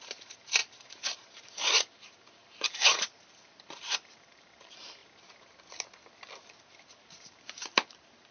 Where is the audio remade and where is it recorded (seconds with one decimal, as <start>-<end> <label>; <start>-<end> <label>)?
0.0-5.0 remade; 5.0-6.9 recorded; 6.9-8.3 remade